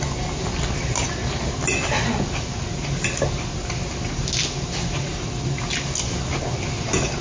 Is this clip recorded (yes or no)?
yes